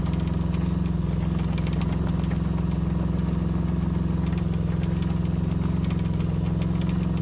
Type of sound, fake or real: real